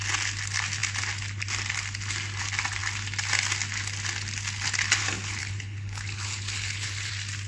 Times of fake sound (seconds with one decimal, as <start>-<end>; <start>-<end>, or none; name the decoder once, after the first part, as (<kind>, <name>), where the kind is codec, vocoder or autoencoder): 5.4-7.1 (codec, HILCodec)